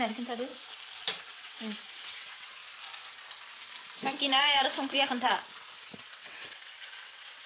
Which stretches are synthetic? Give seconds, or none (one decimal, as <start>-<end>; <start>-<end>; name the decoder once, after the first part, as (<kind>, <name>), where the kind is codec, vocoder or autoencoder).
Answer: 0.0-0.5 (vocoder, WaveNeXt); 1.3-2.6; 4.4-5.3; 6.1-7.5